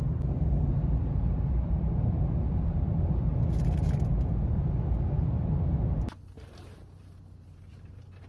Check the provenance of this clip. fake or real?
real